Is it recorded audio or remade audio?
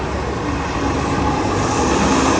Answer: recorded